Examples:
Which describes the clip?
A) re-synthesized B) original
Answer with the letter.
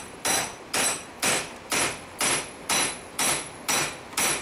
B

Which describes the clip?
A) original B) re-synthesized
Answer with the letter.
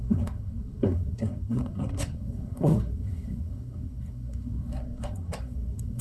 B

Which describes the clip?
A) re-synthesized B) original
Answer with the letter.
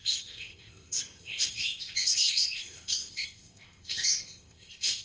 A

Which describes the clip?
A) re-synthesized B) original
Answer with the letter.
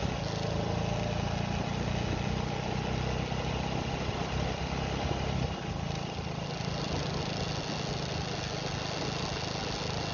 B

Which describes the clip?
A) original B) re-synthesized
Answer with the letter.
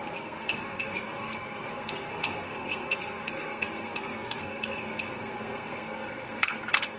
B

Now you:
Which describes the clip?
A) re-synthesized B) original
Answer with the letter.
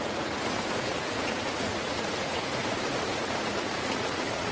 A